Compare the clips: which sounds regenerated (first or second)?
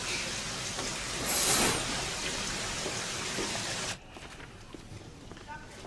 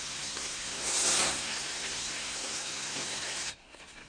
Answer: second